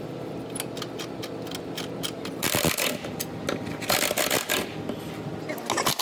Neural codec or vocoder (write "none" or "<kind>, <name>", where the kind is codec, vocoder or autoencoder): none